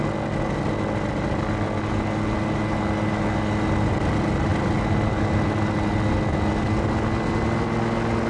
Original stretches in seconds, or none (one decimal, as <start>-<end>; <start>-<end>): 0.0-8.3